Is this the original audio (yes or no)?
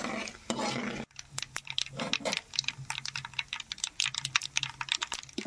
yes